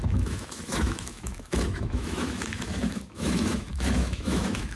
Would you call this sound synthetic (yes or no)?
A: yes